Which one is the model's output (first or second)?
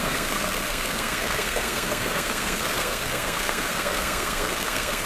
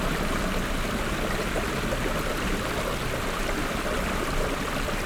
first